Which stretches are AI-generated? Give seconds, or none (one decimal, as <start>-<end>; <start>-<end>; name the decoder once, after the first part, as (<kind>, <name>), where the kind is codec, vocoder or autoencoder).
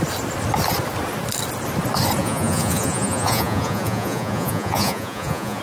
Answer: 2.2-5.6 (vocoder, Vocos)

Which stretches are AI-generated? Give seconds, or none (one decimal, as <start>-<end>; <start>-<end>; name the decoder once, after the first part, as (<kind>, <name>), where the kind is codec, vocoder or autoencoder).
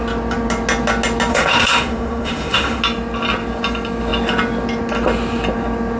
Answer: 1.3-2.8 (autoencoder, DAC-VAE)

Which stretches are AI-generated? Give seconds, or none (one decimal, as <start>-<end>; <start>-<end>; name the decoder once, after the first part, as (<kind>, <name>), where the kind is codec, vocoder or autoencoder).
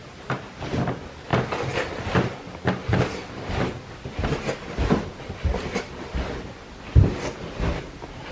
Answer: none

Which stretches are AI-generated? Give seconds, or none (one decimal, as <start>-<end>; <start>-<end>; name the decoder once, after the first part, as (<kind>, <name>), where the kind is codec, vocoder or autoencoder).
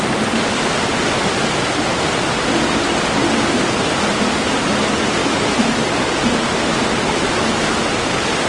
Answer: 5.2-5.9 (autoencoder, DAC-VAE)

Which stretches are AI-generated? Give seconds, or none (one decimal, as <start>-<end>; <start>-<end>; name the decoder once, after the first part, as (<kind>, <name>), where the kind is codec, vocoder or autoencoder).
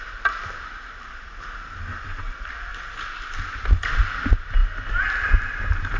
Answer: none